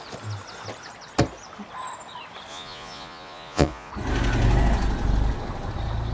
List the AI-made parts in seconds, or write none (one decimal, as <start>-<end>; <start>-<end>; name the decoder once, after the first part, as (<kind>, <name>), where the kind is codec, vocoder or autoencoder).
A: 2.5-3.9 (vocoder, Vocos)